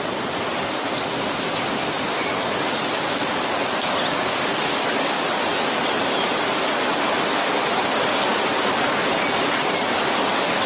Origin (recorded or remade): recorded